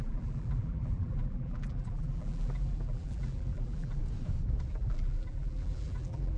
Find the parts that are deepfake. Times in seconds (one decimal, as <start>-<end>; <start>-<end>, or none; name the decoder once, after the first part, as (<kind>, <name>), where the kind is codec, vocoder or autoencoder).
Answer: 0.0-4.0 (vocoder, BigVGAN v2); 4.7-6.4